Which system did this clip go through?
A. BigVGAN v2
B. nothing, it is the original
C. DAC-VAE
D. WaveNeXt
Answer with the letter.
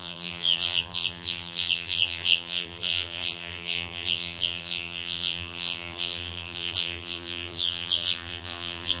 A